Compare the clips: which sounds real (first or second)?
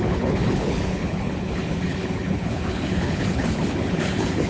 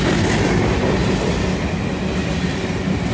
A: second